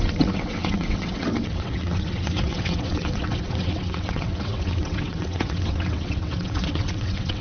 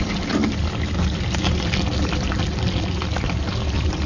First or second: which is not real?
first